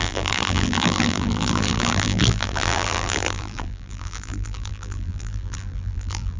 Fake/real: fake